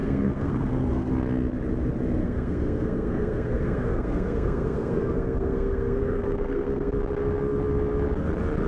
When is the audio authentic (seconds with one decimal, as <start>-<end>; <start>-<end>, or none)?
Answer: 1.1-2.2; 6.9-8.7